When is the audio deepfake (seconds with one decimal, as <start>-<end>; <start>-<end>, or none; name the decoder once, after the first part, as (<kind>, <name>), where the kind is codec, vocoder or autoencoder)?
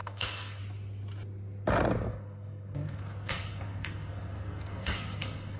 0.0-0.6 (codec, SNAC); 2.1-5.6